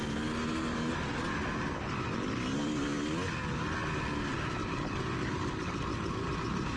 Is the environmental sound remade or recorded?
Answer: recorded